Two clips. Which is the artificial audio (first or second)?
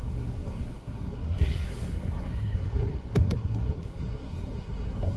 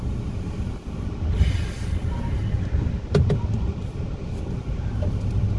first